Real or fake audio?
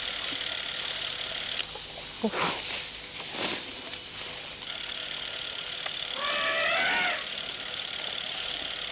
real